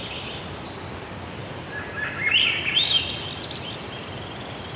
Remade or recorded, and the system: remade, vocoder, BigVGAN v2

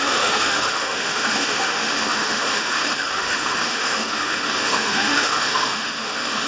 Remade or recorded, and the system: remade, autoencoder, DAC-VAE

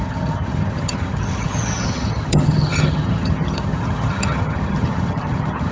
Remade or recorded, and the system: remade, vocoder, HiFi-GAN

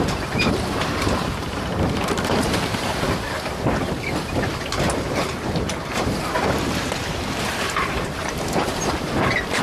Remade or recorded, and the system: remade, vocoder, BigVGAN v2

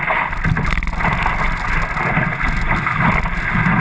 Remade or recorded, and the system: recorded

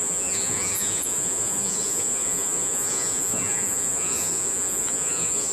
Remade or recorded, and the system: remade, vocoder, Vocos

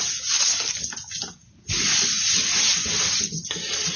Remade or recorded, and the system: recorded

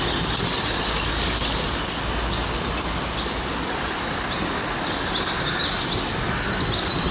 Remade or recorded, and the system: recorded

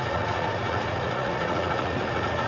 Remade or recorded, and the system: remade, vocoder, Vocos